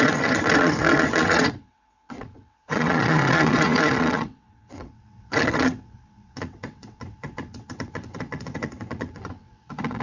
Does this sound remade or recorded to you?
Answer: remade